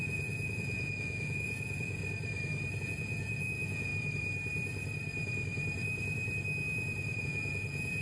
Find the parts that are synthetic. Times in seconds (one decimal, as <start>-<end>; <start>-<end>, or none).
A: 0.0-2.0; 2.8-3.9; 7.2-8.0